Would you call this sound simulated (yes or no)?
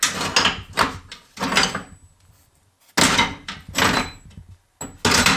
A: no